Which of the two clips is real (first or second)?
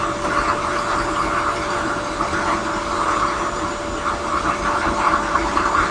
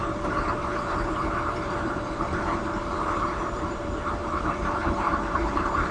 first